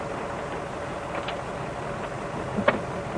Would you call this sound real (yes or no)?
yes